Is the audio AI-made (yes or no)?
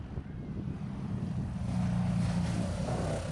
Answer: no